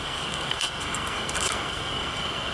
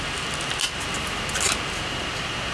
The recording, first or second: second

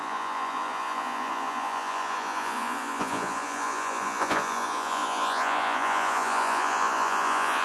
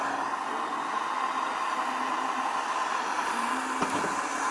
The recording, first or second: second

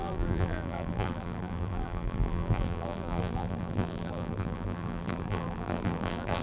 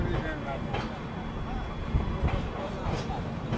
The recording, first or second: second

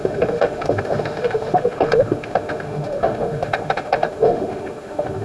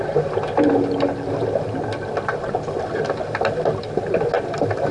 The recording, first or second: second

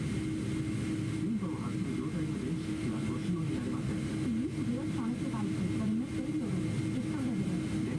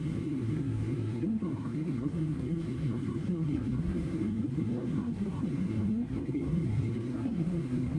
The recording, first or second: first